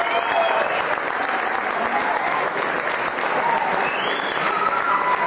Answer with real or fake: real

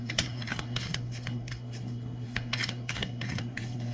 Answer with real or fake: fake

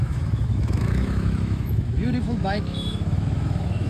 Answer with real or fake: fake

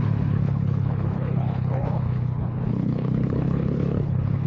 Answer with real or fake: fake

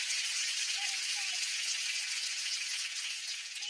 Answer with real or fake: fake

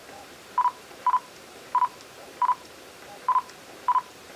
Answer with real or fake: fake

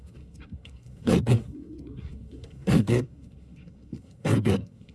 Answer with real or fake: fake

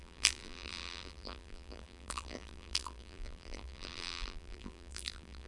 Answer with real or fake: fake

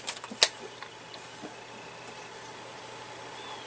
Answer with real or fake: real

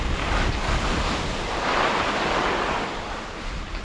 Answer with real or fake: real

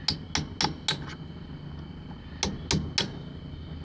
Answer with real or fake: real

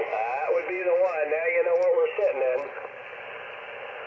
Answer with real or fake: real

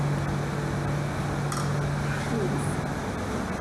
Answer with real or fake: real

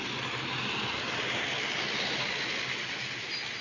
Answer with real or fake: real